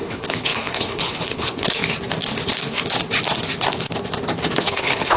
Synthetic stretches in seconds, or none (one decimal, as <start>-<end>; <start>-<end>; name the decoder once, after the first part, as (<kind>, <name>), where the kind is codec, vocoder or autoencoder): 0.0-1.8 (codec, HILCodec); 4.6-5.2